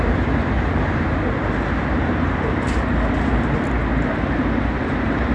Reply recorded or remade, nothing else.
recorded